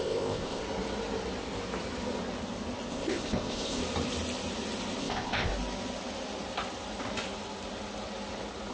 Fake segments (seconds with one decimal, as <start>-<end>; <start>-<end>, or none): 0.0-0.6; 2.9-3.8; 5.0-5.5